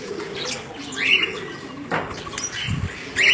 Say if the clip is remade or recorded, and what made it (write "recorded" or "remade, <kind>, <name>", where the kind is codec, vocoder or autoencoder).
recorded